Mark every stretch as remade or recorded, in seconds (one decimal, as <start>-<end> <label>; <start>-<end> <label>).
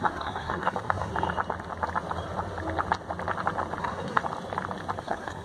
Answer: 0.0-1.1 remade; 1.1-3.8 recorded; 3.8-4.2 remade; 4.2-5.0 recorded; 5.0-5.4 remade